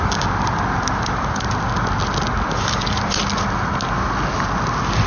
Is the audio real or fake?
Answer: real